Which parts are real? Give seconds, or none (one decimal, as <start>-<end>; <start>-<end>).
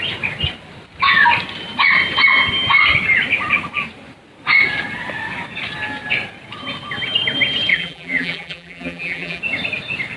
0.0-7.7; 9.4-10.2